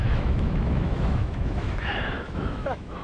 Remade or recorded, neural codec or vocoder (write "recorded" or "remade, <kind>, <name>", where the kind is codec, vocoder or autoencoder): remade, autoencoder, DAC-VAE